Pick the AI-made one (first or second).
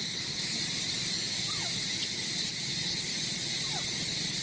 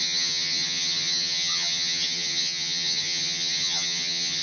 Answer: second